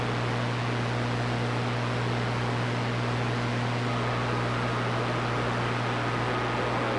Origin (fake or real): real